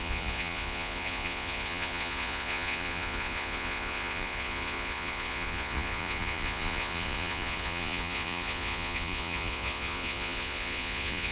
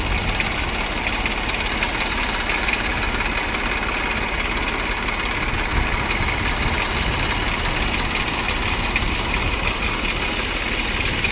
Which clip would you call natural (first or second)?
second